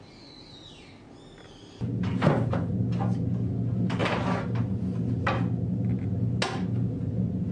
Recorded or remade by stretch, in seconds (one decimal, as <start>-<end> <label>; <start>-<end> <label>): 0.0-7.5 recorded